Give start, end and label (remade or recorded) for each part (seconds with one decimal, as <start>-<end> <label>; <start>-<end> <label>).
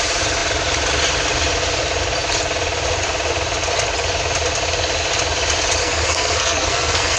0.0-5.8 recorded; 5.8-7.2 remade